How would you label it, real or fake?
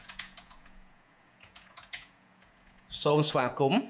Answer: fake